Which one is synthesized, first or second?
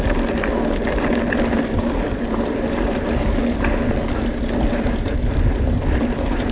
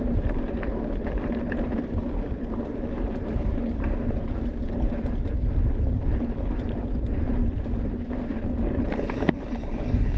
second